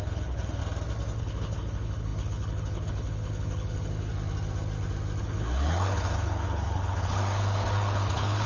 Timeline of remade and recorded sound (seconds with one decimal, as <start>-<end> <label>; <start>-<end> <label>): 0.0-0.6 remade; 0.6-1.2 recorded; 1.2-4.1 remade; 4.1-5.2 recorded; 5.2-8.5 remade